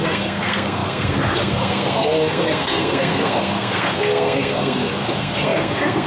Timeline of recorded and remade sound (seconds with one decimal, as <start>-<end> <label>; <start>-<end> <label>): 0.0-6.1 remade